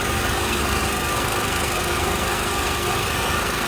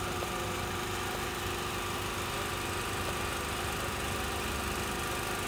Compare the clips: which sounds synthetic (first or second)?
first